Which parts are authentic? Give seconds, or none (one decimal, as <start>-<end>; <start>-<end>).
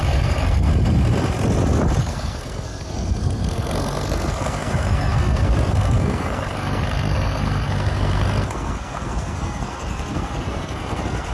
0.7-2.0